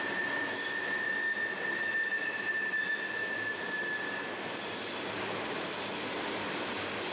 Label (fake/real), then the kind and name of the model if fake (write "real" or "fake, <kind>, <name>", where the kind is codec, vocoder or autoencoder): real